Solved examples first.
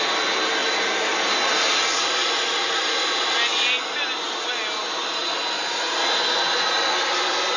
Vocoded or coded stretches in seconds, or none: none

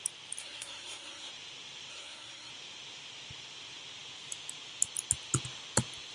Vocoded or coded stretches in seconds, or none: 0.4-1.3 (codec, SNAC); 1.9-2.5

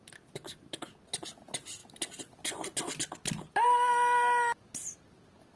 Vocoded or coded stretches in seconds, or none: none

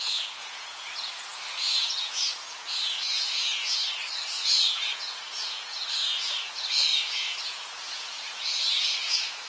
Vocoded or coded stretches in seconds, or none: 0.0-3.8 (vocoder, Vocos); 4.4-9.5

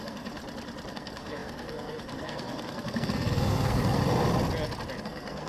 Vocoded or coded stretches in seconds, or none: 0.0-0.4 (codec, SNAC); 0.9-4.0; 5.0-5.5

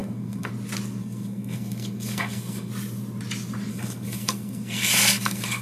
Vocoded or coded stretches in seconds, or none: 0.0-0.5 (codec, SNAC); 1.0-2.7; 3.7-5.6

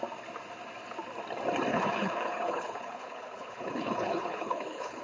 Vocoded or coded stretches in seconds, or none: 1.7-5.0 (codec, HILCodec)